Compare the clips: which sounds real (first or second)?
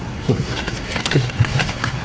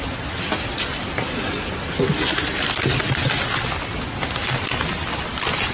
second